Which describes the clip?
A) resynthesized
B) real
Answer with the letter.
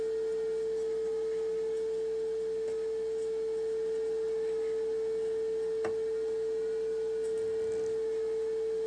B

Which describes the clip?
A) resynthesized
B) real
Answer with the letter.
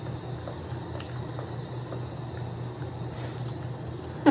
B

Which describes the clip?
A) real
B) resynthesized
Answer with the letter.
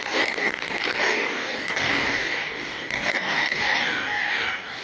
B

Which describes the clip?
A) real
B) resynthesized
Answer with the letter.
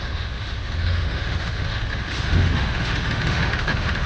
B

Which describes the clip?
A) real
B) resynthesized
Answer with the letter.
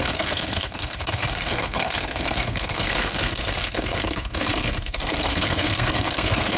B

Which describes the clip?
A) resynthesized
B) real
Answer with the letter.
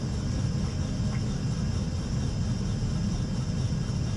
B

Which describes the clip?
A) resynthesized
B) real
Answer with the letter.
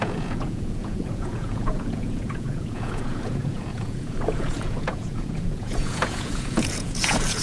A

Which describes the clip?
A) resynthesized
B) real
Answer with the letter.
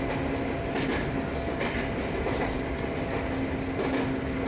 B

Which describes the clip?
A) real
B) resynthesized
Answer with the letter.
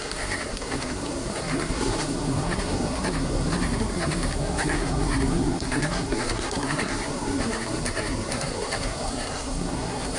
B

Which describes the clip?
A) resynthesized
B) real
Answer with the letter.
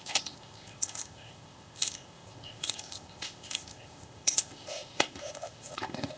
A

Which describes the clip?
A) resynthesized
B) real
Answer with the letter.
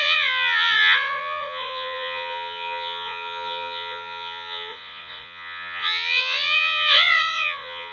A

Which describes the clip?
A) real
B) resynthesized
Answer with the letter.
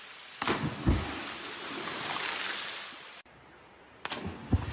A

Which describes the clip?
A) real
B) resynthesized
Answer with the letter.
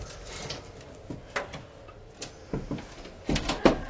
A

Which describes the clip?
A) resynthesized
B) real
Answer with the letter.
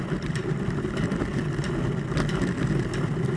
B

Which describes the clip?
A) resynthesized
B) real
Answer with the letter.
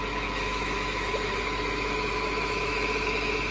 A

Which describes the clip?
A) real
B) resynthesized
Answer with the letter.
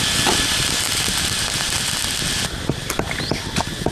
A